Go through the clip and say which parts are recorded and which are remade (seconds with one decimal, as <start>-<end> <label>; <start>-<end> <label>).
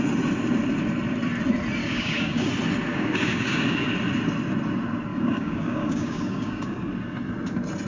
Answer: 0.0-1.8 recorded; 1.8-2.5 remade; 2.5-2.9 recorded; 2.9-3.9 remade; 3.9-5.1 recorded; 5.1-6.9 remade; 6.9-7.9 recorded